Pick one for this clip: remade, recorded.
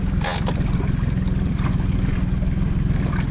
recorded